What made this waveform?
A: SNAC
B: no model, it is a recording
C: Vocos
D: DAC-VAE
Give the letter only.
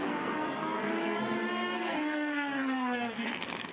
A